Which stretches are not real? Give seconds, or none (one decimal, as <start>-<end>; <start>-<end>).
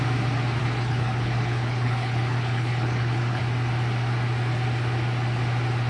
0.6-3.4